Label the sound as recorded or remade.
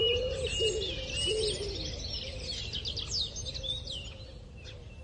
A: recorded